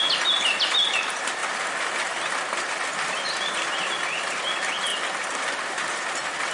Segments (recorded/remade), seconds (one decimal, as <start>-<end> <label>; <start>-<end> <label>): 0.0-6.5 recorded